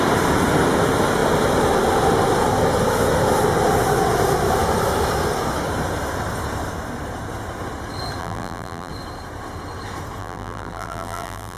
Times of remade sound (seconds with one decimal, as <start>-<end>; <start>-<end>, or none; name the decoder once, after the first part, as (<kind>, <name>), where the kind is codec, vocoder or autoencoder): 8.2-8.9 (vocoder, BigVGAN v2); 10.2-11.6